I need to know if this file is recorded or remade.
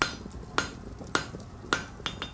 recorded